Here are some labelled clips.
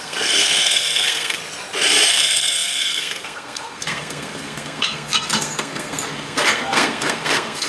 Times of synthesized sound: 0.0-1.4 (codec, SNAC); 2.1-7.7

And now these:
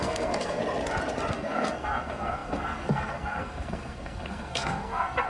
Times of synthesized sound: 0.0-0.6 (codec, SNAC); 1.3-5.3

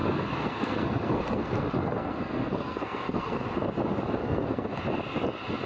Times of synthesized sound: 0.0-3.4 (codec, SNAC); 4.2-4.8